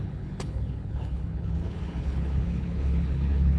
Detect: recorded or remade remade